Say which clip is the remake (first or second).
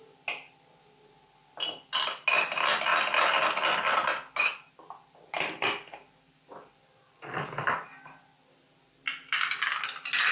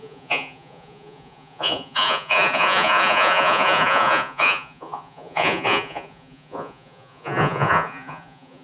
second